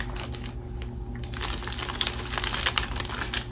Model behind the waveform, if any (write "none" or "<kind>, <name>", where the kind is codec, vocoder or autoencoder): none